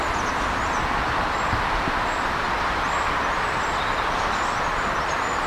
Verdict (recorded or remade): recorded